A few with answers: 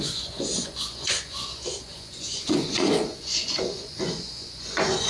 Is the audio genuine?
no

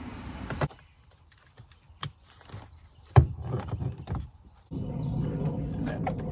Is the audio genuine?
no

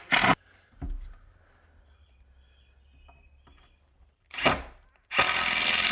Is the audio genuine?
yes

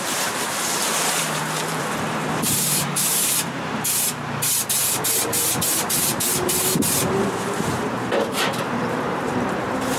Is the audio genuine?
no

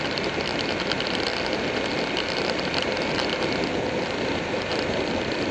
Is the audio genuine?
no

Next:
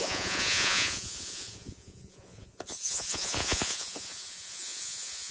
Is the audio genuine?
no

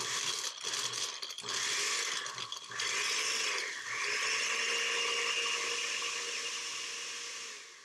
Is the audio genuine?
yes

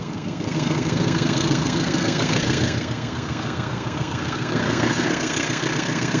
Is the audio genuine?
no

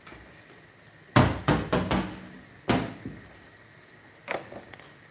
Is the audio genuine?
yes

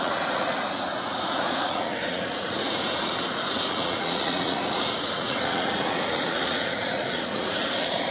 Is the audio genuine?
no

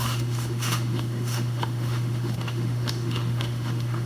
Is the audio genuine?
no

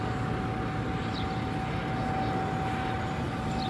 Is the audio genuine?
yes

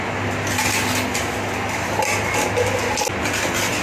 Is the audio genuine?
yes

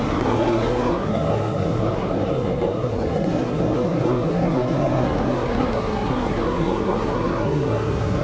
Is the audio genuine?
no